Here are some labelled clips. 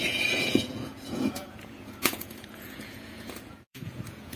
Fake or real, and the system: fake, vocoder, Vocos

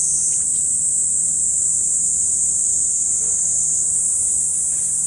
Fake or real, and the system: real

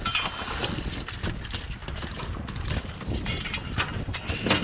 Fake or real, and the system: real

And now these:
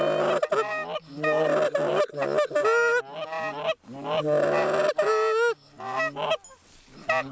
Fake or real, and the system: real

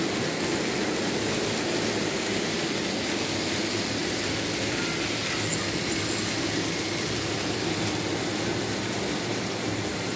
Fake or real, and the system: real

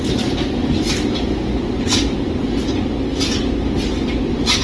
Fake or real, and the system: real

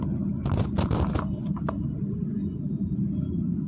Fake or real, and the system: real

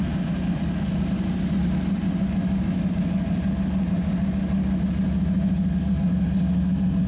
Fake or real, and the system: real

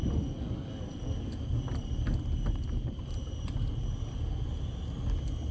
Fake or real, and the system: real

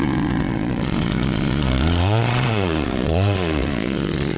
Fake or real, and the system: fake, vocoder, Vocos